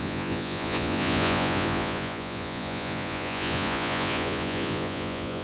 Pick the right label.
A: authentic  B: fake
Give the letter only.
B